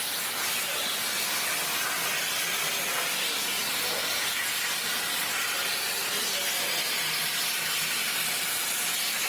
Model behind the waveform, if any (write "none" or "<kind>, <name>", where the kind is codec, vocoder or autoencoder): none